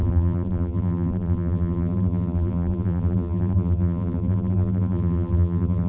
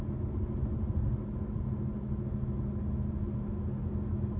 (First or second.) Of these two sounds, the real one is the second